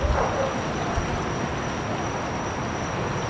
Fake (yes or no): no